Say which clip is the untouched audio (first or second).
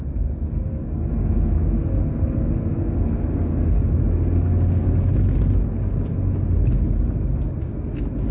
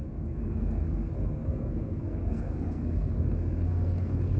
first